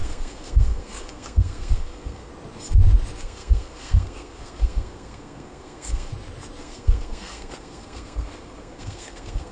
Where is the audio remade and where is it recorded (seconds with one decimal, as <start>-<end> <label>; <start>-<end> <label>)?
0.0-2.3 remade; 2.3-3.2 recorded; 3.2-6.1 remade; 6.1-6.6 recorded; 6.6-9.5 remade